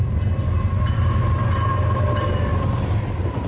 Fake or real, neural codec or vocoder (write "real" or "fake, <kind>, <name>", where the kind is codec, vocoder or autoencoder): fake, vocoder, BigVGAN v2